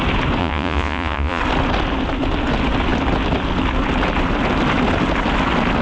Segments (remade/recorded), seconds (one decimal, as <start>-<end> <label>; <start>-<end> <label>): 0.0-0.4 recorded; 0.4-1.4 remade; 1.4-5.8 recorded